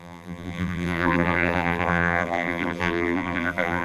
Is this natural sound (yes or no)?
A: no